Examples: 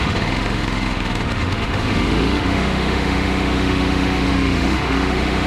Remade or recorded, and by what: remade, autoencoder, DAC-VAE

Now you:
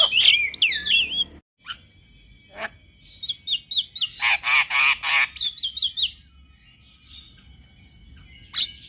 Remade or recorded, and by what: recorded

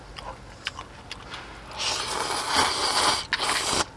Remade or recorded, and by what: recorded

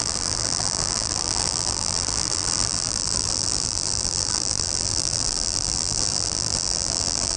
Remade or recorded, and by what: remade, vocoder, BigVGAN v2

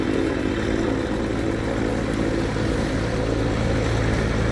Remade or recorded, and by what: recorded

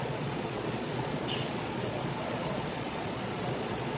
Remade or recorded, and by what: remade, vocoder, Vocos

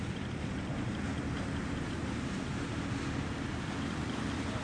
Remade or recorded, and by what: recorded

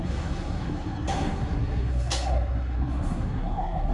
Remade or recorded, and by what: remade, codec, SNAC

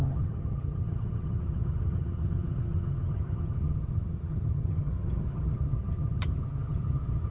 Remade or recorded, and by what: remade, vocoder, HiFi-GAN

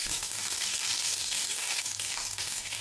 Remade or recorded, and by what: remade, codec, DAC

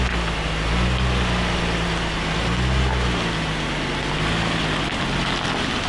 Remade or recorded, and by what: recorded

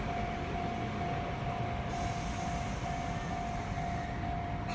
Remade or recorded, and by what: recorded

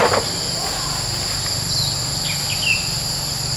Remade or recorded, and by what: recorded